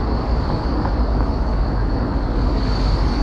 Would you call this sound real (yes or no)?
no